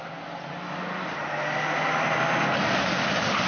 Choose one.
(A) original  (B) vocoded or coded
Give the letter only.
A